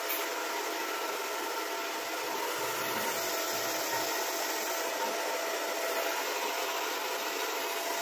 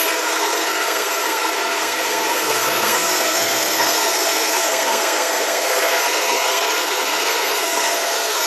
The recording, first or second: first